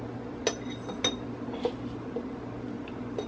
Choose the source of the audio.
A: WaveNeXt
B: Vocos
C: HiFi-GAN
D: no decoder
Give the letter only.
D